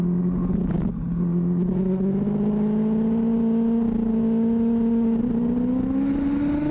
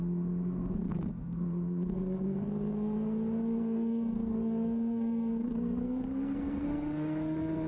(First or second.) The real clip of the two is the first